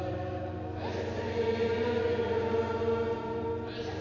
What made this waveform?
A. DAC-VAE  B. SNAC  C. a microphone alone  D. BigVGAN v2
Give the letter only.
C